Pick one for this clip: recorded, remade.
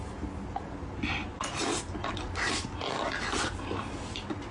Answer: recorded